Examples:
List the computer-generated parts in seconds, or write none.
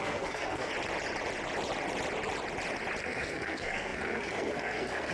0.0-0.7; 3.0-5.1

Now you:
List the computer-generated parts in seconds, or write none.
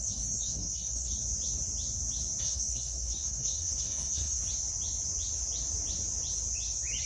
0.0-1.1; 2.4-4.4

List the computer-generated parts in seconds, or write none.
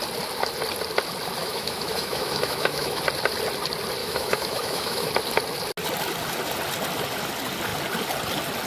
1.4-3.0; 4.0-5.1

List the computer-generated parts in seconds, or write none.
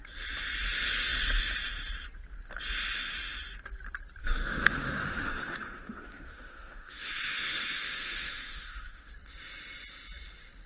4.2-9.1